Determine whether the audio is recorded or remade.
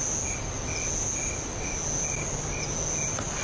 recorded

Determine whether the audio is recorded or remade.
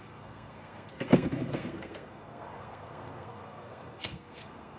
remade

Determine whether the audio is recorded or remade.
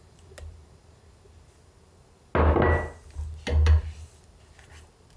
recorded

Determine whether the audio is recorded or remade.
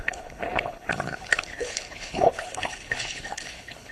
remade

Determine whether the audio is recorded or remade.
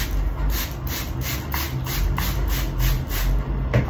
recorded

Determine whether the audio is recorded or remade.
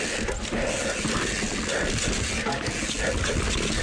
recorded